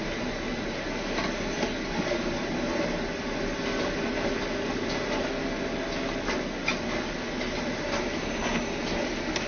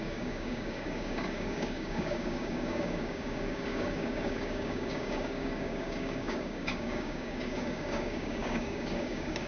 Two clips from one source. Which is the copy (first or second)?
second